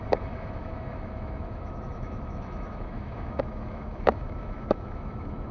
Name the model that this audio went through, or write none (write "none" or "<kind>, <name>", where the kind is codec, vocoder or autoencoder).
autoencoder, DAC-VAE